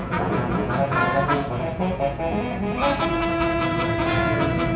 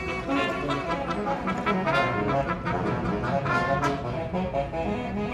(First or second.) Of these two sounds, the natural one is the second